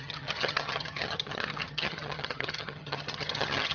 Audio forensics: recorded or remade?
remade